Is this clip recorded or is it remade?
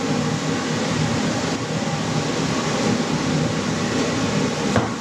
recorded